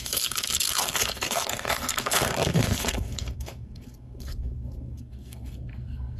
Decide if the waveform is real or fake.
fake